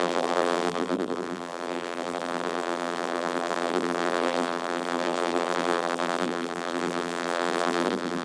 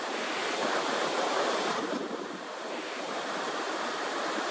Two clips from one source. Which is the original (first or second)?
second